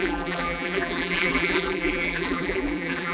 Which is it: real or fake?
fake